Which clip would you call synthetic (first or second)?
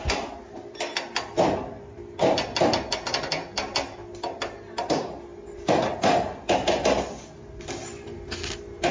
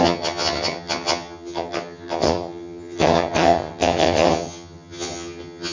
second